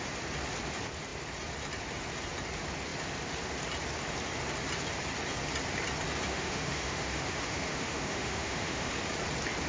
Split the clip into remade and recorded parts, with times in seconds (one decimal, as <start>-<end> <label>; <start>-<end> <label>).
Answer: 0.0-6.3 recorded; 6.3-8.9 remade; 8.9-9.7 recorded